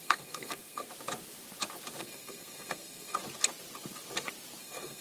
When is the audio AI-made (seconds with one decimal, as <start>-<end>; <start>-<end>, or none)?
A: 0.0-0.9; 2.0-3.2; 4.6-5.0